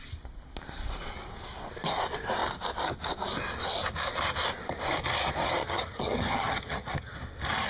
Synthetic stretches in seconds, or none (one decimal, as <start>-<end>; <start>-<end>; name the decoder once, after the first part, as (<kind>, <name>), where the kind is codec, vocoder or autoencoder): 5.6-7.2 (vocoder, HiFi-GAN)